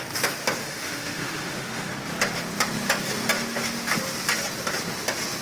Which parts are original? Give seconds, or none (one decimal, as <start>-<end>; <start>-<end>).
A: 0.0-0.6; 1.9-5.4